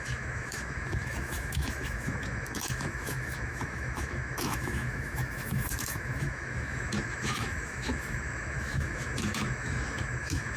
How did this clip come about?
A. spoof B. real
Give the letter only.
A